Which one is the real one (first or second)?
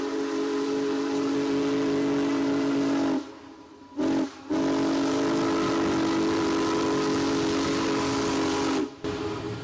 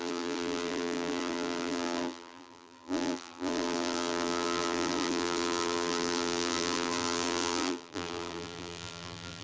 first